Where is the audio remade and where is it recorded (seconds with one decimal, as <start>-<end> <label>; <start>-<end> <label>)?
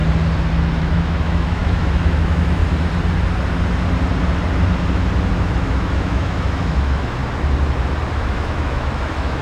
0.0-0.8 recorded; 0.8-2.6 remade; 2.6-5.3 recorded; 5.3-7.2 remade; 7.2-8.1 recorded; 8.1-9.4 remade